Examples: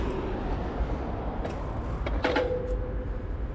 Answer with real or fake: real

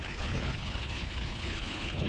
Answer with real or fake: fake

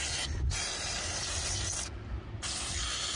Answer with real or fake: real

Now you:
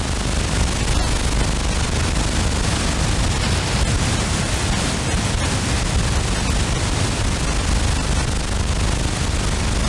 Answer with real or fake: real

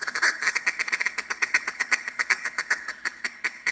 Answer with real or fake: fake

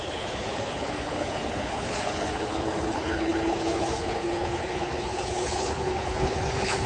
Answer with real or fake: fake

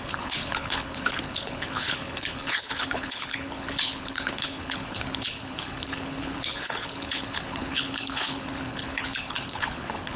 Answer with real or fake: fake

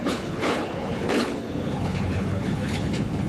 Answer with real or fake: fake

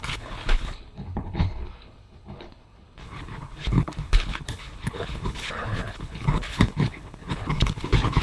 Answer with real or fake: fake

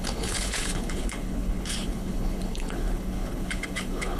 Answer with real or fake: fake